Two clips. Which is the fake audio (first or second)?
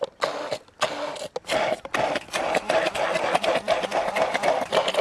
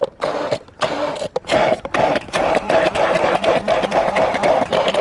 second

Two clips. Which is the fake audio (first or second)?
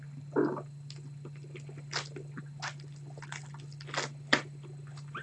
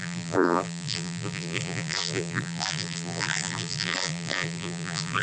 second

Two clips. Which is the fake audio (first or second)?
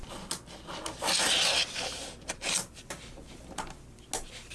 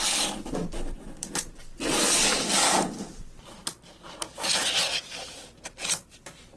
second